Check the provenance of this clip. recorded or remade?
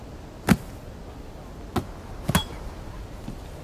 recorded